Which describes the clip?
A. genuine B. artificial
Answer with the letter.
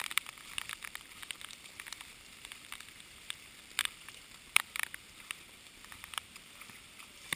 B